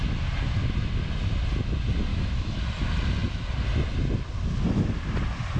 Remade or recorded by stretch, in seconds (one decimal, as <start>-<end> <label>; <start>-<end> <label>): 0.0-2.1 recorded; 2.1-2.6 remade; 2.6-5.6 recorded